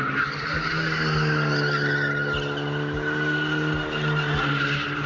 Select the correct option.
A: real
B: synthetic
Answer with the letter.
A